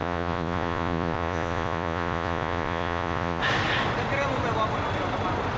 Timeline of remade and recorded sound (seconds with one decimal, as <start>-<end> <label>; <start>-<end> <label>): 0.0-3.4 remade; 3.4-5.6 recorded